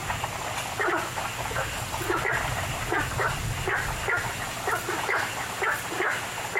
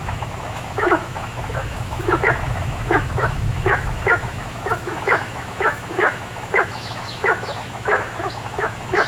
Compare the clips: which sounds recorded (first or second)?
first